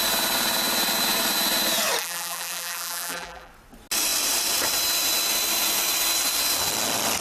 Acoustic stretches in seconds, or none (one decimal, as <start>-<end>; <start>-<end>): 0.0-2.0; 3.5-7.2